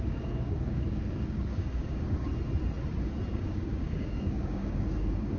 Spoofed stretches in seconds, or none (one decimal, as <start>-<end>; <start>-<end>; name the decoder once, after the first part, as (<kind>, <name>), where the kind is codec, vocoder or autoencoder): 0.0-2.3 (codec, DAC); 3.3-5.4